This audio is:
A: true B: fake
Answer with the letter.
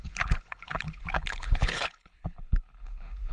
B